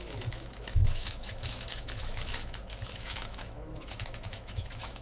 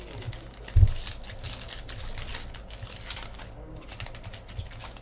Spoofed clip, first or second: first